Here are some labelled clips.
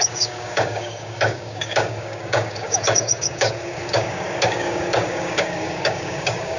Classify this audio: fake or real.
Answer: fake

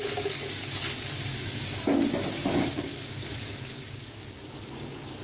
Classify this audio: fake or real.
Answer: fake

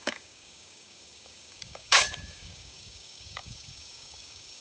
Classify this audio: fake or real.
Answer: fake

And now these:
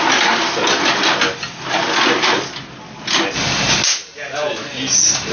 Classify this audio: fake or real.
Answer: real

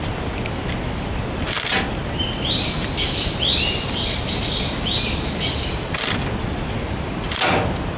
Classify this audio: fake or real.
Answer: real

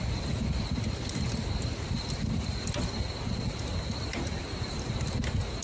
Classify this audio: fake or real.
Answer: real